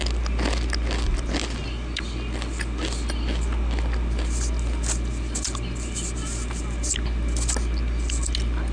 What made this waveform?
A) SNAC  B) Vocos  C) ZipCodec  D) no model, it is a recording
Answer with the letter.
D